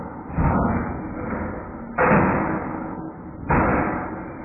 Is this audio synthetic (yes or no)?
no